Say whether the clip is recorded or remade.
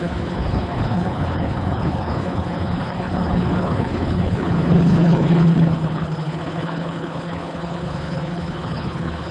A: remade